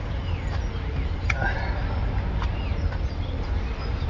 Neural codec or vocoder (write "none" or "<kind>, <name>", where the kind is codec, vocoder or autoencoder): vocoder, BigVGAN v2